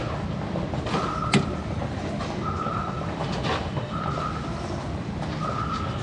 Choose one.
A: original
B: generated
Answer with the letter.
A